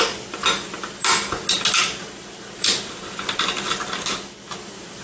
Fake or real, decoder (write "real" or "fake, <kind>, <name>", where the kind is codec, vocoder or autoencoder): real